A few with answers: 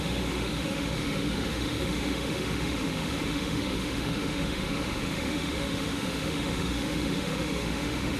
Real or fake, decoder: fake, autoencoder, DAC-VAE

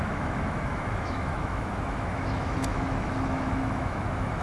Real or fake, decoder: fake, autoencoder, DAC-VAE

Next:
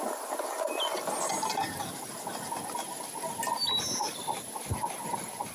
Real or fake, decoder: real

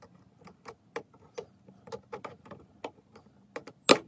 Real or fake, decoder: real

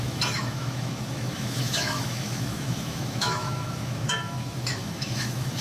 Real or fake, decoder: fake, autoencoder, DAC-VAE